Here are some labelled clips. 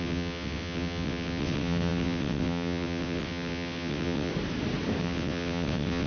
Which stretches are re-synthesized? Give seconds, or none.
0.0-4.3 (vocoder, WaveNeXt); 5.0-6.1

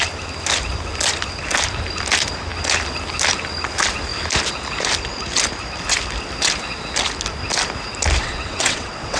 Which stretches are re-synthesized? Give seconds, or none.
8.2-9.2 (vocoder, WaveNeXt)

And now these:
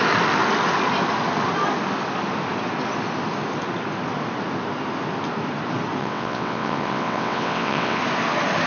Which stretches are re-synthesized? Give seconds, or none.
6.0-8.0 (vocoder, WaveNeXt)

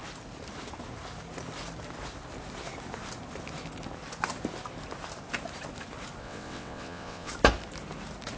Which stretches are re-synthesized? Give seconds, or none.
6.2-7.3 (vocoder, WaveNeXt)

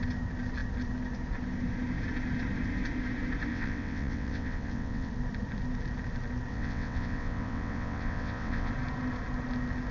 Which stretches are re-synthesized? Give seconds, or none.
3.5-5.1 (vocoder, WaveNeXt); 6.5-8.7

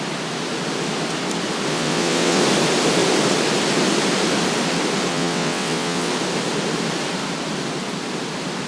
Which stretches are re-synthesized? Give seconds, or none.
1.7-2.4 (vocoder, WaveNeXt); 5.1-6.1